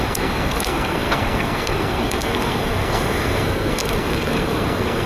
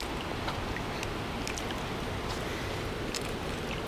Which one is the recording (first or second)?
second